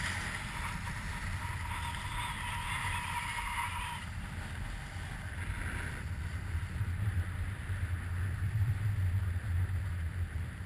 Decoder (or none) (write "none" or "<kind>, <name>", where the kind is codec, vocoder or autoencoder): none